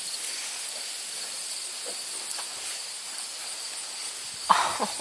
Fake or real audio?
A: real